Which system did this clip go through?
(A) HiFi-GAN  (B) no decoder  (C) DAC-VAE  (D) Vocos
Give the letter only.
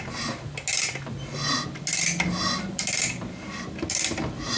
B